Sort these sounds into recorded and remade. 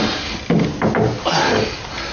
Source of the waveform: recorded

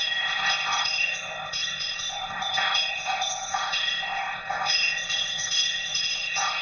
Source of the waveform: remade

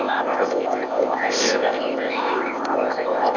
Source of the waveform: remade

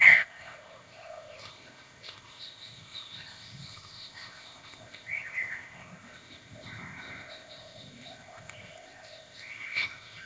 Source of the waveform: remade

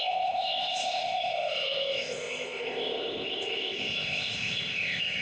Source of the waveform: remade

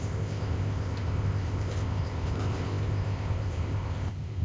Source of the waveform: remade